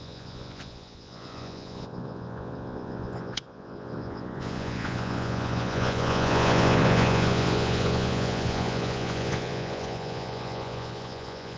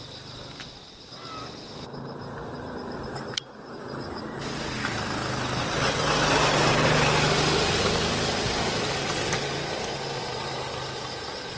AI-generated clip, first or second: first